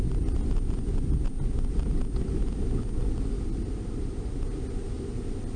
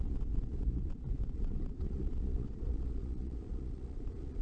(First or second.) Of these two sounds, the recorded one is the first